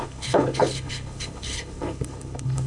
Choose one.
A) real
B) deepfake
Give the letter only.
B